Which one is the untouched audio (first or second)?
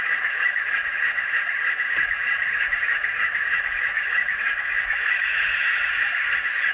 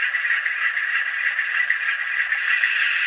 second